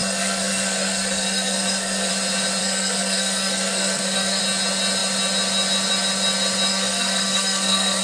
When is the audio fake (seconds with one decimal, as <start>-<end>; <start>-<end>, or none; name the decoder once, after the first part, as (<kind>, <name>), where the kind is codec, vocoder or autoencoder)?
0.0-2.1 (codec, SNAC); 2.6-4.4; 6.7-8.0